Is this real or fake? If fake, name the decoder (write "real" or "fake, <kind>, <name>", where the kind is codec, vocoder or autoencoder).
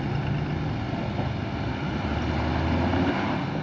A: real